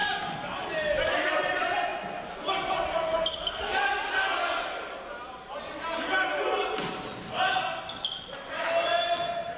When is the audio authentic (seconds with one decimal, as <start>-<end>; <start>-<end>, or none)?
0.0-9.6